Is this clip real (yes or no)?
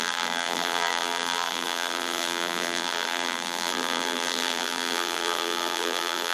no